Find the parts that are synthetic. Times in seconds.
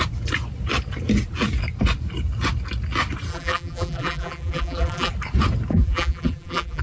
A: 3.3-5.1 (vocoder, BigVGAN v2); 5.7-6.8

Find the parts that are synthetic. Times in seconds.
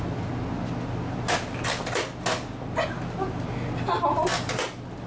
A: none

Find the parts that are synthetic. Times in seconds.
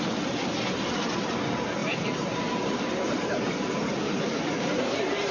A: 1.8-5.3 (vocoder, BigVGAN v2)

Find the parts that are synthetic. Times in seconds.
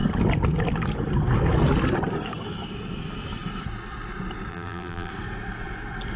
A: 4.5-5.1 (vocoder, BigVGAN v2)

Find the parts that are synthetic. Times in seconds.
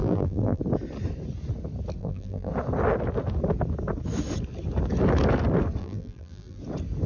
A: 0.0-0.6 (vocoder, BigVGAN v2); 2.0-2.5; 5.8-6.6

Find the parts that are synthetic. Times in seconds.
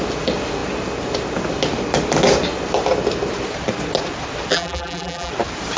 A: 4.5-5.3 (vocoder, BigVGAN v2)